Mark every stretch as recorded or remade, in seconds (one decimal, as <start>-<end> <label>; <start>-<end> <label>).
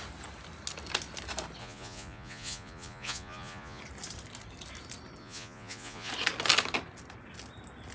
0.0-1.6 recorded; 1.6-3.8 remade; 3.8-5.2 recorded; 5.2-6.1 remade; 6.1-7.9 recorded